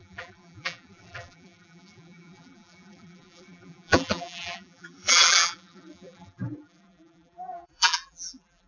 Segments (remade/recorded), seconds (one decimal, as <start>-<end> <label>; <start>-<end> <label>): 0.0-8.7 remade

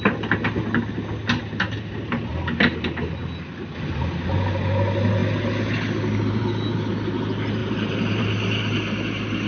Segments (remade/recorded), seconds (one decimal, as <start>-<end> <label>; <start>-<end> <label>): 0.0-7.6 recorded; 7.6-8.2 remade; 8.2-9.5 recorded